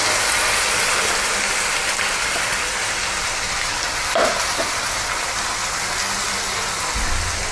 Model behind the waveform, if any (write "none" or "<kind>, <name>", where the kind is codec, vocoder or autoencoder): none